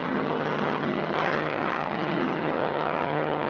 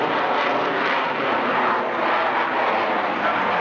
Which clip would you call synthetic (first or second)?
first